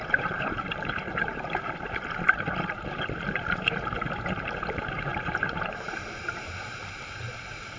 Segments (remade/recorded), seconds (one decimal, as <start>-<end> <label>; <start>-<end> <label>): 0.0-7.8 remade